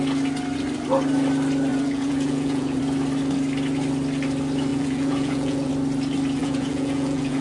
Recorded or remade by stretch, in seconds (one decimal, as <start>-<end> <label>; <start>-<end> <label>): 0.0-1.7 recorded; 1.7-2.8 remade; 2.8-4.7 recorded; 4.7-5.7 remade; 5.7-6.4 recorded; 6.4-7.4 remade

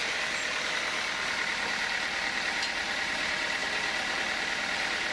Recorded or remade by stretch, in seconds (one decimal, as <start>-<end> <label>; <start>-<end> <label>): 0.0-5.1 recorded

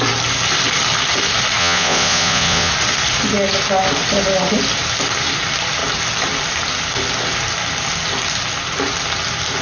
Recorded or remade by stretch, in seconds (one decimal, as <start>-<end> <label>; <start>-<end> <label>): 0.0-1.6 recorded; 1.6-2.7 remade; 2.7-9.6 recorded

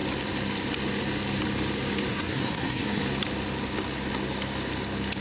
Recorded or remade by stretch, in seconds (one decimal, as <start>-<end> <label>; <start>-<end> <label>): 0.0-2.1 recorded; 2.1-3.0 remade; 3.0-5.2 recorded

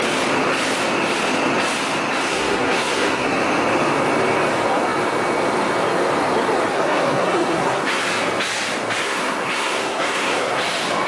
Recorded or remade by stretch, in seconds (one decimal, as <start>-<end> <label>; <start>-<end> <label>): 0.0-2.3 recorded; 2.3-3.4 remade; 3.4-6.7 recorded; 6.7-8.0 remade; 8.0-9.0 recorded; 9.0-10.6 remade; 10.6-11.1 recorded

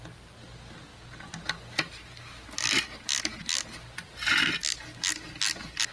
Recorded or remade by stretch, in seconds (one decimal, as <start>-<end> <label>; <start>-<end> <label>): 0.0-5.9 recorded